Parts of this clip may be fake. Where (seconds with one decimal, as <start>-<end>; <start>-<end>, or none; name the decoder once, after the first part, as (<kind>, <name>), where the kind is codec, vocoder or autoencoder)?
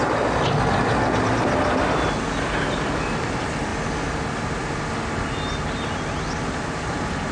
none